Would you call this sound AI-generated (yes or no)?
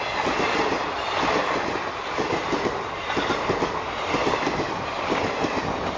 no